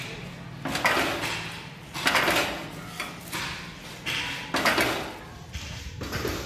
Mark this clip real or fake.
real